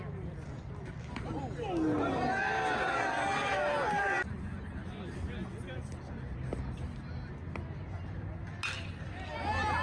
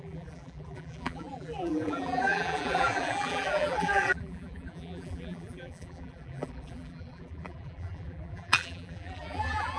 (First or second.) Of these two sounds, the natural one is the first